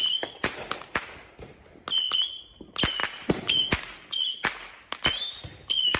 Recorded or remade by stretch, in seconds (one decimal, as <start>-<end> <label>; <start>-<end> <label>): 0.0-3.0 recorded; 3.0-3.7 remade; 3.7-6.0 recorded